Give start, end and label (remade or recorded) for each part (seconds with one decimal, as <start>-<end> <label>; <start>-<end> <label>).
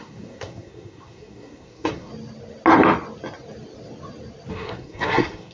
0.0-2.1 remade; 2.1-4.5 recorded; 4.5-5.5 remade